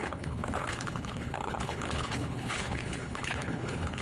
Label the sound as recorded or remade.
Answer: remade